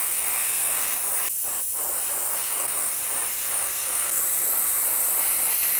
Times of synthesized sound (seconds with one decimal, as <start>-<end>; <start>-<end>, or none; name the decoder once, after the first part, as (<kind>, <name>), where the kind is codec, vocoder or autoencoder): 0.0-1.0 (codec, SNAC); 2.3-2.9; 3.6-4.2

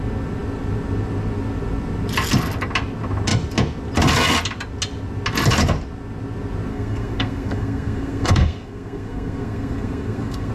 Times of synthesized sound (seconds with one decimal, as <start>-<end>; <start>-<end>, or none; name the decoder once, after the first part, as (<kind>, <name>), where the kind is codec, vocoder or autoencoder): 6.7-10.5 (codec, SNAC)